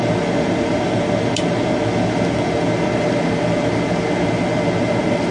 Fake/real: real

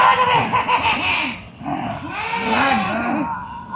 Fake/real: real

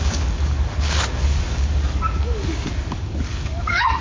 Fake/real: fake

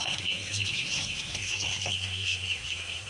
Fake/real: fake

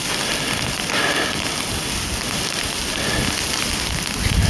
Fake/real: real